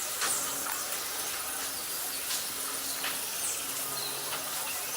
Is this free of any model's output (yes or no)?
yes